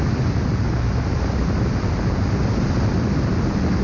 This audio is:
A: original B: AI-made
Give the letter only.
A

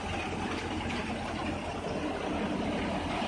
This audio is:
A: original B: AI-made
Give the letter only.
A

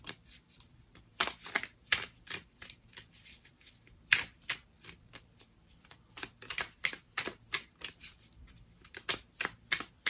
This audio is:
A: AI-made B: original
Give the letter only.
A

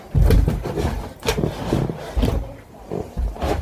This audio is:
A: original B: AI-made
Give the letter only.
B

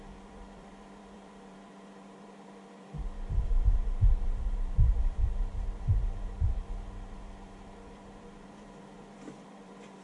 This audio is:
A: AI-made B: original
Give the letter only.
A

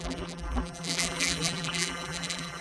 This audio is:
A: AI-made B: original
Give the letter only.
A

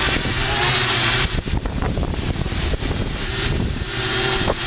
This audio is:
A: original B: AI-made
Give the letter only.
B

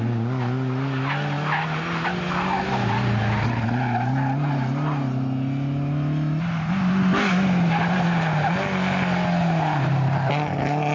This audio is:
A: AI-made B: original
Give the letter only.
B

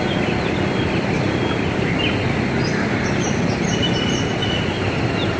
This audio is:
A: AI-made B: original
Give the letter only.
B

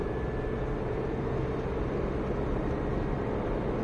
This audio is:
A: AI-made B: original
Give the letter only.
B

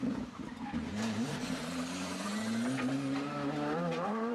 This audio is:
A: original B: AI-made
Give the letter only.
B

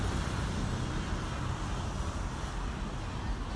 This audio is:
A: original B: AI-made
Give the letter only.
B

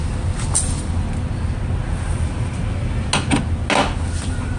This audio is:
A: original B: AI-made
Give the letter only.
A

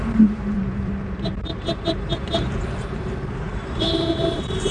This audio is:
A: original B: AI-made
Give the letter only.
B